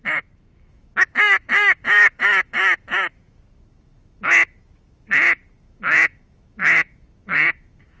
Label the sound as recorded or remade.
remade